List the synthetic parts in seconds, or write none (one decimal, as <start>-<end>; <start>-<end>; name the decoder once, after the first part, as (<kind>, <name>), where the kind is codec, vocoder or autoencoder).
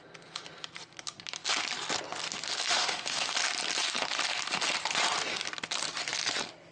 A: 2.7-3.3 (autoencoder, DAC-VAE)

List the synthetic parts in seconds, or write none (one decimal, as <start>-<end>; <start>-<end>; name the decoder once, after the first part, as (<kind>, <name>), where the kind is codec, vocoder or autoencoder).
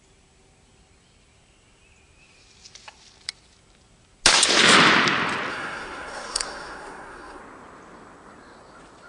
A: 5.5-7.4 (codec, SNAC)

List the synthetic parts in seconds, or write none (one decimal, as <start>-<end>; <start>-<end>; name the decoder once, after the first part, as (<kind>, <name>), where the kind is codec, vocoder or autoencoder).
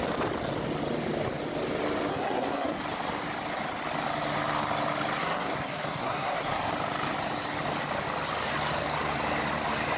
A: 2.1-2.8 (codec, SNAC); 5.2-6.7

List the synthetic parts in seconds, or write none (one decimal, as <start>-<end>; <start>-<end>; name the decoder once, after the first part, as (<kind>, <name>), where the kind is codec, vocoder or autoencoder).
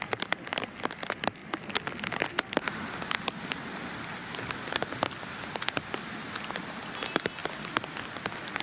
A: none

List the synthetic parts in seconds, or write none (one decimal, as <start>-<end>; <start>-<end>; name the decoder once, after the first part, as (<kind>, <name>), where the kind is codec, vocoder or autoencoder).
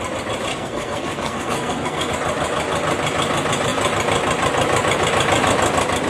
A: 0.5-2.1 (codec, SNAC)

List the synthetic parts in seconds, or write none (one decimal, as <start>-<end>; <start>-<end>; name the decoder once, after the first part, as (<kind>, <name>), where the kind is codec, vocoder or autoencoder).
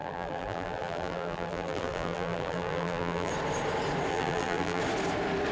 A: 0.0-3.3 (vocoder, BigVGAN v2); 4.1-4.8